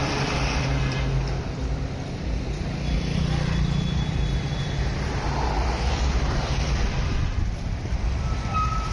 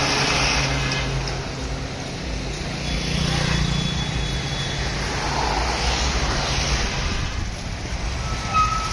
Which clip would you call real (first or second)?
second